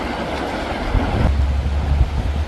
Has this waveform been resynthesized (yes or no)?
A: no